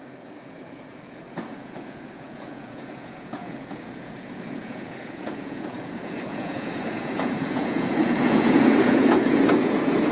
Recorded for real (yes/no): no